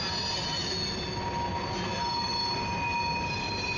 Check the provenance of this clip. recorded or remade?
recorded